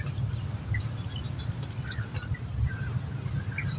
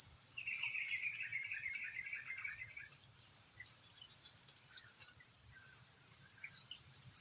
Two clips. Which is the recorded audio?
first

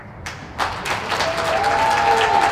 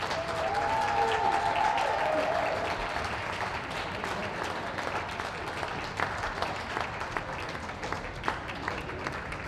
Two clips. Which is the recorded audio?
first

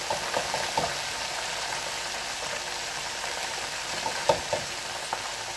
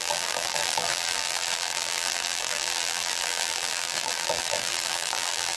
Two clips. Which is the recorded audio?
first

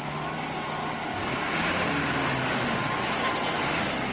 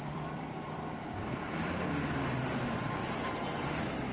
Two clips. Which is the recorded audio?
first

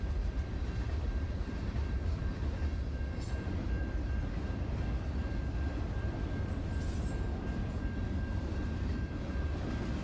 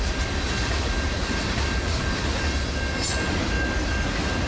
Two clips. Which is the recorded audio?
second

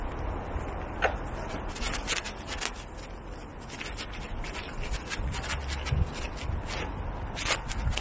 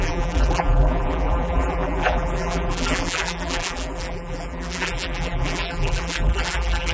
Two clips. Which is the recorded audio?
first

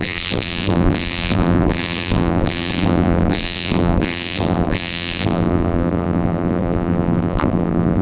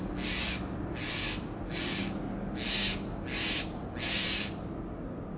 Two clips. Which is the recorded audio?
second